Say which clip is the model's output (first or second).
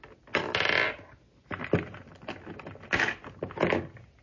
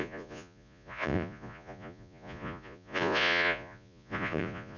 second